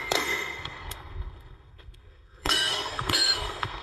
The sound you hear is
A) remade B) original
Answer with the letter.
A